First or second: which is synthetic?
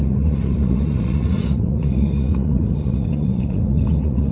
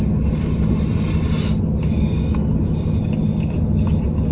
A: first